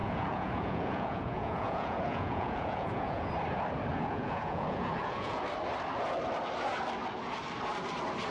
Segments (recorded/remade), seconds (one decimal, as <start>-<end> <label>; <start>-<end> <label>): 0.0-3.3 remade; 3.3-3.9 recorded; 3.9-5.4 remade; 5.4-8.3 recorded